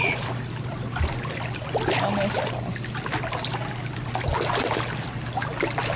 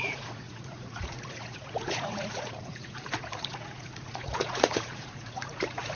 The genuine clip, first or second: first